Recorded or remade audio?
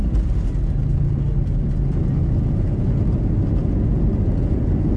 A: recorded